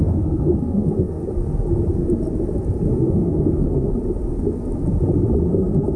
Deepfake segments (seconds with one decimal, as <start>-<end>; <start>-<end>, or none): 0.0-1.2; 2.9-3.9; 5.5-6.0